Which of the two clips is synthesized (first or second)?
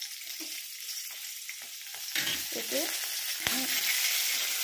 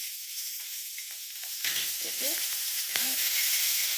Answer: second